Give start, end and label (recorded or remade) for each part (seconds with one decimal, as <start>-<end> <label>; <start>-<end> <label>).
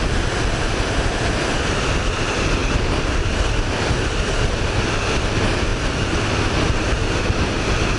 0.0-5.7 recorded; 5.7-6.2 remade; 6.2-8.0 recorded